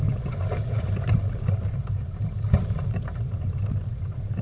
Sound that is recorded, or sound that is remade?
remade